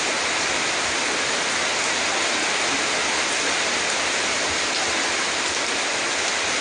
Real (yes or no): yes